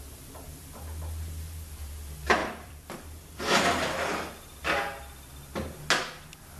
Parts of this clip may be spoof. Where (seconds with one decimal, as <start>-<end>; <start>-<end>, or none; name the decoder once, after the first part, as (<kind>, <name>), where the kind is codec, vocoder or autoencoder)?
2.4-3.4 (vocoder, BigVGAN v2)